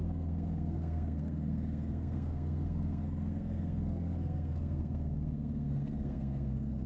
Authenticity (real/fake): fake